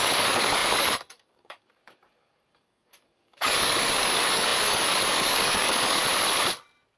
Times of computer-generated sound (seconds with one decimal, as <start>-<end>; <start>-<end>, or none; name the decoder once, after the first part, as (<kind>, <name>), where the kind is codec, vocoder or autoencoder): 0.0-6.0 (codec, DAC)